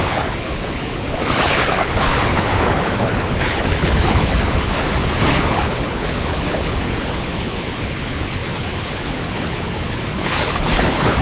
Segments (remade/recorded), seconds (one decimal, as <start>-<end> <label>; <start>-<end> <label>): 0.0-11.2 remade